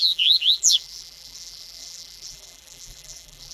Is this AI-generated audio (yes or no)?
yes